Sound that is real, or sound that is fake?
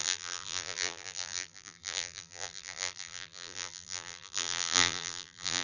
fake